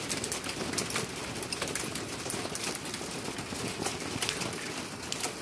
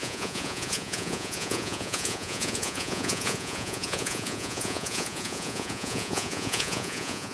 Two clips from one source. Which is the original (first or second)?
first